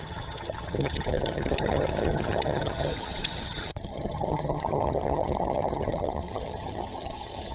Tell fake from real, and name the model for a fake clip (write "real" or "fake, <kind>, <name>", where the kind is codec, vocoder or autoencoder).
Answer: fake, vocoder, HiFi-GAN